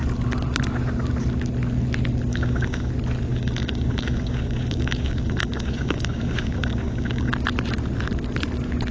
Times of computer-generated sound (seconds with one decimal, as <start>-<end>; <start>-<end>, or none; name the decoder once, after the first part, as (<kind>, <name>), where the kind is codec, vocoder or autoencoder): 2.3-2.9 (codec, DAC); 3.3-7.3